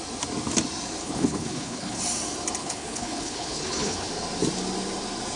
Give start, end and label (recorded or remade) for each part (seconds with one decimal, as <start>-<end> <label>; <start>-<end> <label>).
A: 0.0-1.0 recorded; 1.0-2.0 remade; 2.0-2.6 recorded; 2.6-4.1 remade; 4.1-5.4 recorded